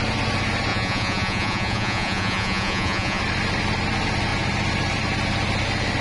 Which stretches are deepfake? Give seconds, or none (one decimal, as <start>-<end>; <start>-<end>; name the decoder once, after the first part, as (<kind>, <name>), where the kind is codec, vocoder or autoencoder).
0.7-3.2 (vocoder, Vocos)